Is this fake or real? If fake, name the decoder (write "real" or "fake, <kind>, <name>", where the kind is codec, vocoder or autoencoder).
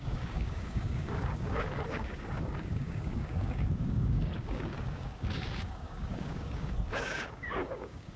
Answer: fake, codec, DAC